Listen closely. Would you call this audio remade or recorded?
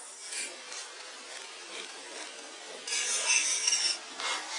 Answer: recorded